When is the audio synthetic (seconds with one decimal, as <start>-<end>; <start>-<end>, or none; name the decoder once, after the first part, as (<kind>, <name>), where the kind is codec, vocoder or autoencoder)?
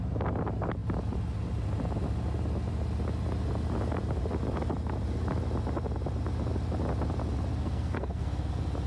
7.6-8.5 (codec, SNAC)